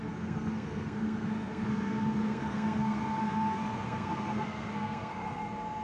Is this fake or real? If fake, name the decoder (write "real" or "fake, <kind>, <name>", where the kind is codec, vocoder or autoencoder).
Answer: fake, codec, SNAC